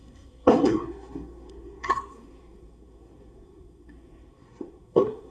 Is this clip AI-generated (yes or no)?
yes